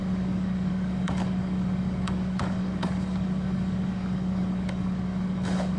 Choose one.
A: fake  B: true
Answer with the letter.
A